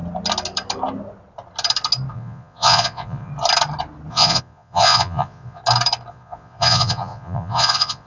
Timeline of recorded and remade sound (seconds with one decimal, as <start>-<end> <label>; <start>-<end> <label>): 0.0-2.1 recorded; 2.1-3.3 remade; 3.3-4.1 recorded; 4.1-5.6 remade; 5.6-6.1 recorded; 6.1-8.1 remade